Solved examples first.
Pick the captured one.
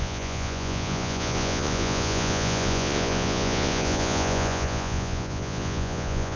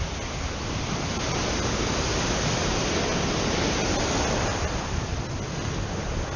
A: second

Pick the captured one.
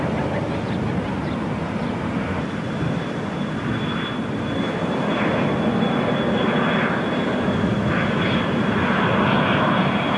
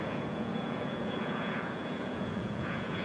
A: first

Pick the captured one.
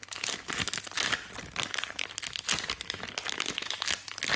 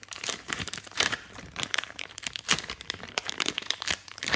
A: first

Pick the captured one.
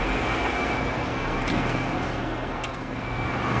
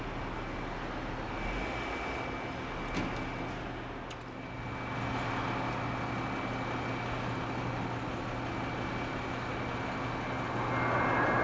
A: second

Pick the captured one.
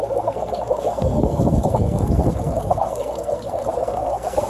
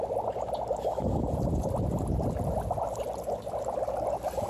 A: second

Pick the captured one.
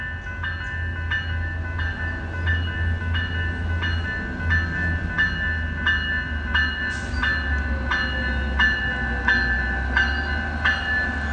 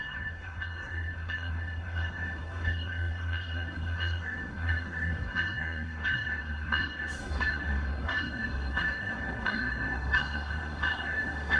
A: first